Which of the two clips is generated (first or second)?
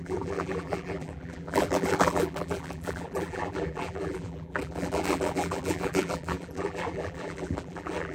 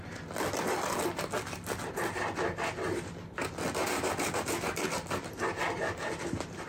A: first